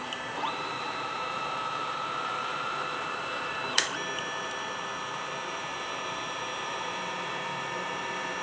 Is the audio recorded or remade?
remade